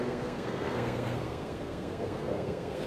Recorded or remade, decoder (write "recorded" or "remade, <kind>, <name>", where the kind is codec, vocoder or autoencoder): remade, codec, SNAC